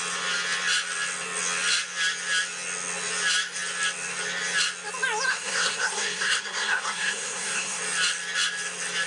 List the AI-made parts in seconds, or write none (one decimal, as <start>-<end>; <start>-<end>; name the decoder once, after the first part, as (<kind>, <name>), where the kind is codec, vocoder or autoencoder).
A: 5.3-7.8 (codec, SNAC)